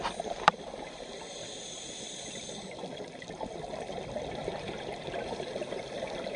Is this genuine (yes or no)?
yes